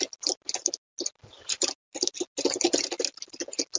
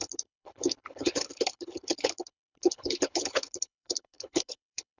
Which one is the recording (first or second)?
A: first